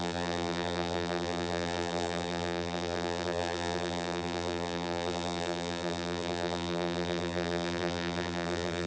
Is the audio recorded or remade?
remade